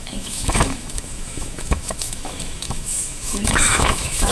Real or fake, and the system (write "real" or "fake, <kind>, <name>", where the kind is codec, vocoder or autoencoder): fake, autoencoder, DAC-VAE